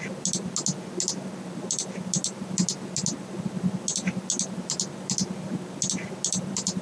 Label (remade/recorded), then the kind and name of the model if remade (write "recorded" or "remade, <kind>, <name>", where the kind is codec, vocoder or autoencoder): recorded